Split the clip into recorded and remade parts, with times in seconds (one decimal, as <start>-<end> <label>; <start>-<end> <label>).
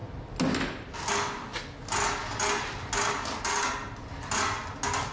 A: 0.0-5.1 recorded